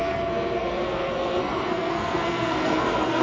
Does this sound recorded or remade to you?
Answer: remade